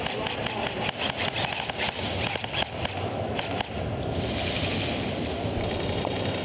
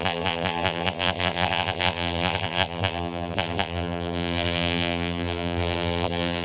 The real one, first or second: first